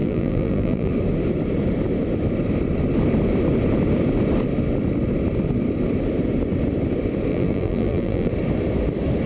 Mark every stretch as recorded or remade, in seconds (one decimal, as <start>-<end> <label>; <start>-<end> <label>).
0.0-0.9 remade; 0.9-7.3 recorded; 7.3-8.3 remade; 8.3-9.3 recorded